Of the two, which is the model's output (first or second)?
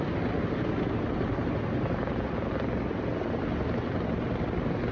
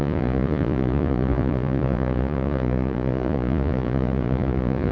second